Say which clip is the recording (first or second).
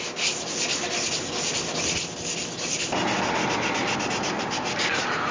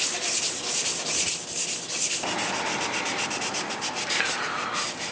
first